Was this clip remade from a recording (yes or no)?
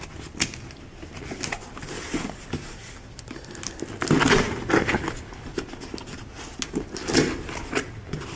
no